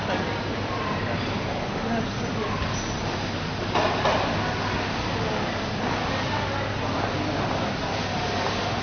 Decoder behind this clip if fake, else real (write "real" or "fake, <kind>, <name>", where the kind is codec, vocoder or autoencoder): real